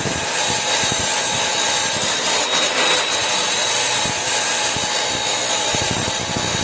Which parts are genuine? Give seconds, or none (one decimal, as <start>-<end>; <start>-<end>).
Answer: 0.0-6.6